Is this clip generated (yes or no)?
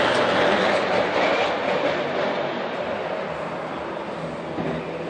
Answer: no